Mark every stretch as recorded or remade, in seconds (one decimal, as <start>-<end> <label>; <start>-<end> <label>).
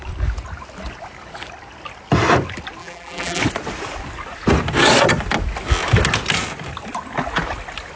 0.0-2.8 recorded; 2.8-3.4 remade; 3.4-8.0 recorded